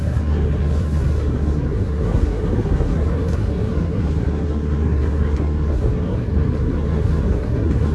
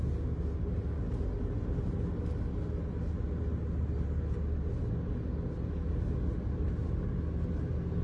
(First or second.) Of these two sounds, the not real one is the first